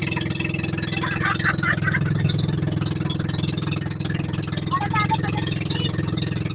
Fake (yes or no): no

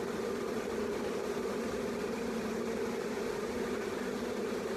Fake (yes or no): no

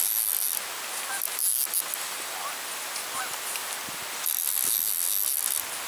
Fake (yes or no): no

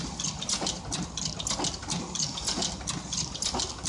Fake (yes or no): no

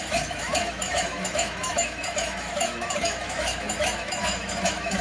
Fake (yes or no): yes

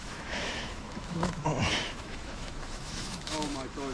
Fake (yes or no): yes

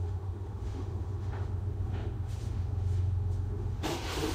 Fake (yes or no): yes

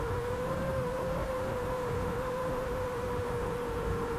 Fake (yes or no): yes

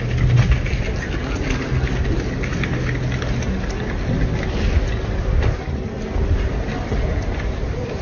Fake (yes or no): no